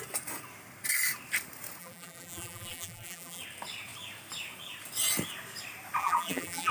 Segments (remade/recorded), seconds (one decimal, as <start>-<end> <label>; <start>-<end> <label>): 0.0-1.8 recorded; 1.8-3.4 remade; 3.4-6.0 recorded; 6.0-6.7 remade